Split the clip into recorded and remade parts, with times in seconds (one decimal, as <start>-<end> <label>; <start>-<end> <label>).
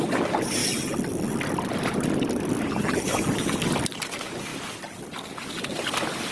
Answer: 0.0-6.3 recorded